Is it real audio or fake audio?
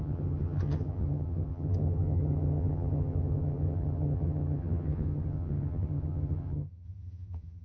fake